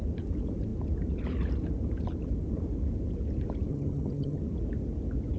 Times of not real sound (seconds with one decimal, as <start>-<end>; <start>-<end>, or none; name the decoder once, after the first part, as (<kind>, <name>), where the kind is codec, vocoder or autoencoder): 3.7-4.4 (vocoder, HiFi-GAN)